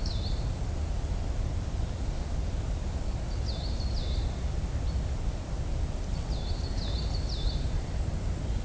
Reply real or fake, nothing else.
real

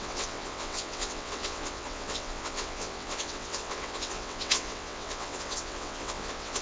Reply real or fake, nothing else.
fake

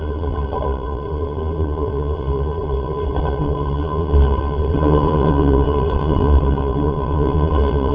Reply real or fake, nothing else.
fake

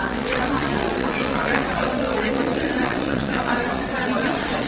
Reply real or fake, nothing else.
fake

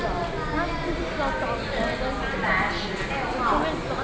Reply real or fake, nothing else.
real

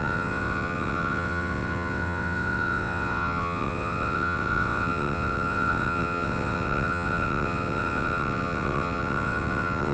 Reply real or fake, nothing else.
fake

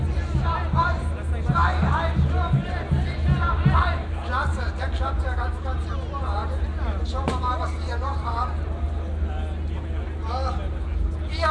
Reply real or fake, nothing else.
real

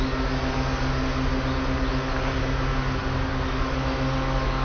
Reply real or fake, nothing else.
real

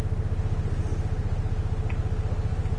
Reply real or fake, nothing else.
real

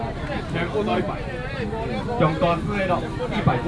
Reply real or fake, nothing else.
real